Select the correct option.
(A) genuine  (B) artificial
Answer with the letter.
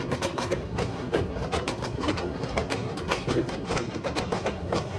B